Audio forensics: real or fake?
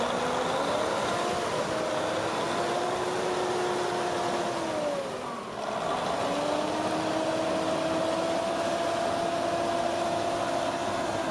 real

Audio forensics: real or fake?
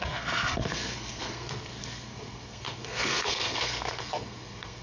fake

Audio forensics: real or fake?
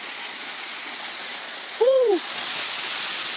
fake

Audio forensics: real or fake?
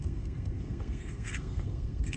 fake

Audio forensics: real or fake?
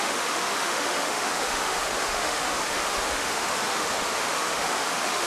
fake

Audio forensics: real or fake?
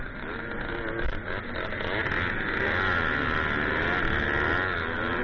real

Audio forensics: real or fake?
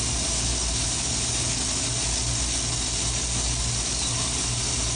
real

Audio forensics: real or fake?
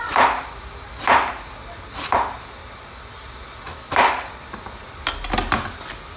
real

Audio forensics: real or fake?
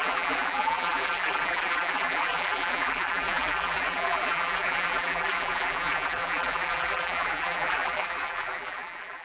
fake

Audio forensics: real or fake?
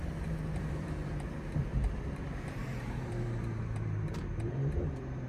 fake